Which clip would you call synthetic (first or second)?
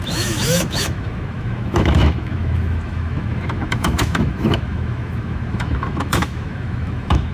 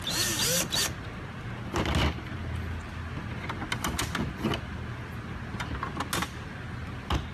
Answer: first